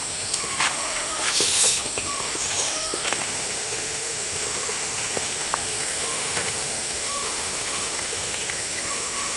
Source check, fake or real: fake